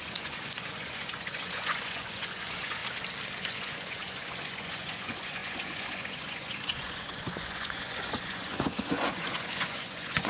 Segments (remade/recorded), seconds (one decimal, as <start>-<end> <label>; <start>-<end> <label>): 0.0-2.8 remade; 2.8-3.4 recorded; 3.4-10.3 remade